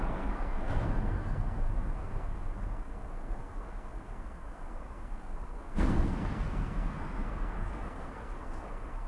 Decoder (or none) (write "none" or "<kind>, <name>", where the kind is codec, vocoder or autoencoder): codec, SNAC